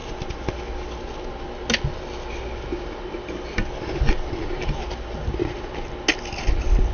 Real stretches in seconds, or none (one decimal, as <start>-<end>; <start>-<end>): 0.0-6.9